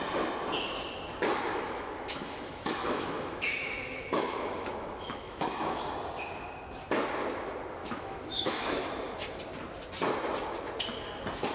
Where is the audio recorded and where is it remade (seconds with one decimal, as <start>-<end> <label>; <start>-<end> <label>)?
0.0-1.5 recorded; 1.5-5.8 remade; 5.8-7.8 recorded; 7.8-8.8 remade; 8.8-11.5 recorded

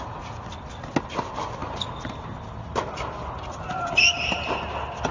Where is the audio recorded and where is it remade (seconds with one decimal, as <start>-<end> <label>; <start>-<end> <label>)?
0.0-5.1 recorded

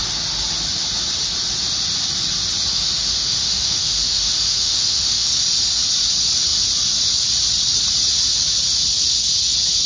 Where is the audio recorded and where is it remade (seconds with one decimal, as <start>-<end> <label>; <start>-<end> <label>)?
0.0-2.7 recorded; 2.7-5.3 remade; 5.3-9.9 recorded